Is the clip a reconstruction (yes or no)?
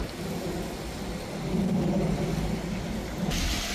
no